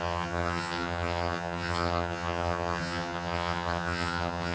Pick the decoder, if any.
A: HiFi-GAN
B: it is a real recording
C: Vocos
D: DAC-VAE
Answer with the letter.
A